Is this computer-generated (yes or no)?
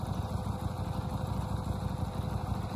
no